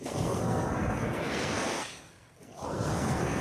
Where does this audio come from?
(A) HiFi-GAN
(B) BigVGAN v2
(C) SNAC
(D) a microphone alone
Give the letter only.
C